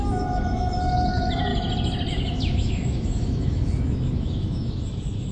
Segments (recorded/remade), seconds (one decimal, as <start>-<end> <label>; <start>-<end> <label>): 0.0-1.5 remade; 1.5-2.1 recorded; 2.1-5.3 remade